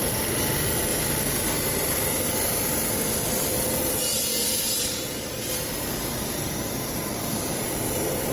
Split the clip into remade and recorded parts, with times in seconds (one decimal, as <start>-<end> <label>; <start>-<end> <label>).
0.0-0.9 recorded; 0.9-2.3 remade; 2.3-3.4 recorded; 3.4-8.3 remade